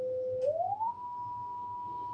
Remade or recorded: recorded